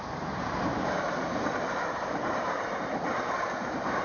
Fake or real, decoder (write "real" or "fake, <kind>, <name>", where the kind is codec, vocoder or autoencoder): fake, vocoder, BigVGAN v2